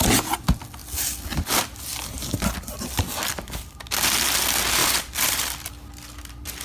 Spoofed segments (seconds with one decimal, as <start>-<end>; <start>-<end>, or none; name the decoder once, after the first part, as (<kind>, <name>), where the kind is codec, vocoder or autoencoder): 4.8-5.7 (vocoder, BigVGAN v2)